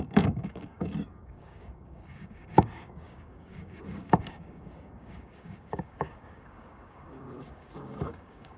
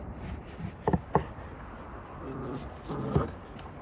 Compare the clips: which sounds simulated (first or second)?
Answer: first